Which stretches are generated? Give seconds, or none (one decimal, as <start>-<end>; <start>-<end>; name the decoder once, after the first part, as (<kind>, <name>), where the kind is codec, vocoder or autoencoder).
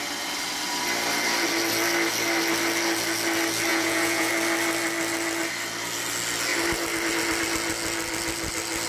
3.7-4.3 (vocoder, Vocos)